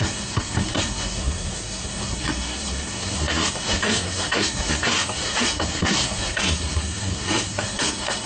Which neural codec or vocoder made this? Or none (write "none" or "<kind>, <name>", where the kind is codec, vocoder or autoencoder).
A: codec, SNAC